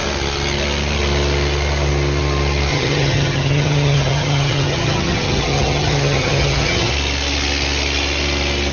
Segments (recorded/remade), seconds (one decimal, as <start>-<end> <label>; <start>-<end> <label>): 0.0-2.7 recorded; 2.7-6.9 remade; 6.9-8.7 recorded